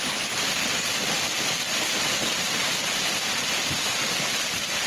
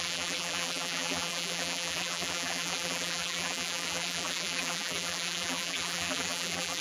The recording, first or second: first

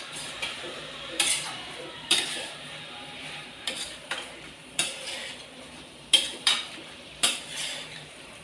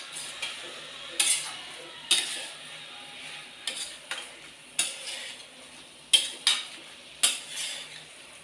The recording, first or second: second